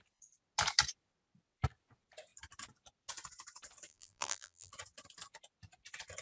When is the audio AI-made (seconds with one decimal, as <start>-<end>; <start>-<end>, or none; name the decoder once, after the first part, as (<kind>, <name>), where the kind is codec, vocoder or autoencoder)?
3.9-4.7 (vocoder, BigVGAN v2)